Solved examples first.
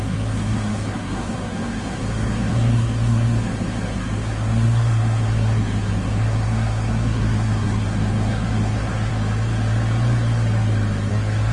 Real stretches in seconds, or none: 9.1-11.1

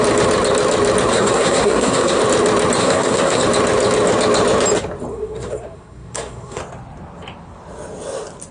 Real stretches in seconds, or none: 0.0-1.1; 2.2-2.8; 3.4-5.1; 6.6-8.5

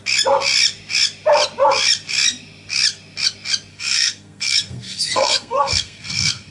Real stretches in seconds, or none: 0.0-3.7